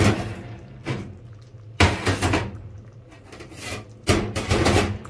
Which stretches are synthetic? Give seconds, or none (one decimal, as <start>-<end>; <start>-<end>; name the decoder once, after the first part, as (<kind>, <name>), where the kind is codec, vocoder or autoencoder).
0.8-3.9 (vocoder, BigVGAN v2)